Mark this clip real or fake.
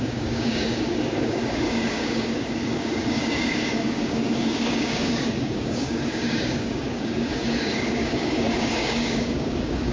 fake